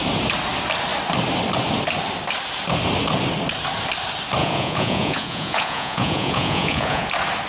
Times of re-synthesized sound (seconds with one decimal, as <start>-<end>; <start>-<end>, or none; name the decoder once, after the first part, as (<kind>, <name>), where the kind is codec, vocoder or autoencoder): 4.4-7.1 (vocoder, Vocos)